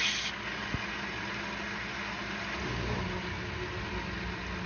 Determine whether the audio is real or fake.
real